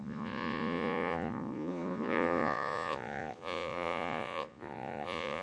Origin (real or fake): fake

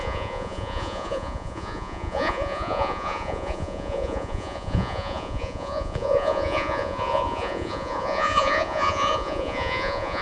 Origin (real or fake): fake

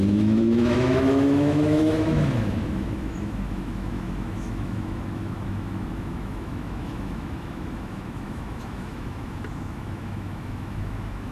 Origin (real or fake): fake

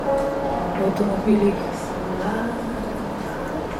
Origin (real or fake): fake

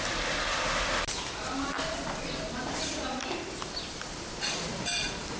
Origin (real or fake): real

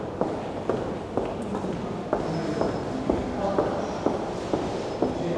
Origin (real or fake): real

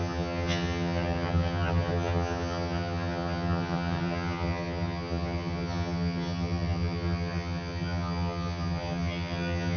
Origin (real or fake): fake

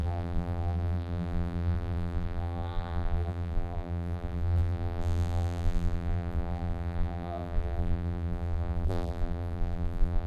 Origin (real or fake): fake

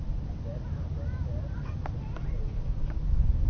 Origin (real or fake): fake